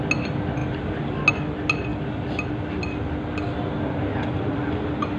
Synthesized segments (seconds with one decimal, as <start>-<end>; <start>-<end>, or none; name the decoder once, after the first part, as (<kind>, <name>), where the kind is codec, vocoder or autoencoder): none

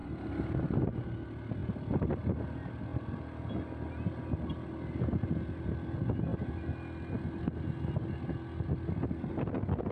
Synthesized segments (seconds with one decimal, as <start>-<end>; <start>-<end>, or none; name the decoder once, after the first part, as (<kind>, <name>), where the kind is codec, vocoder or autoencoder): none